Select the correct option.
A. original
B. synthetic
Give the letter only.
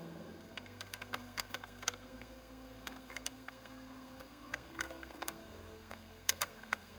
B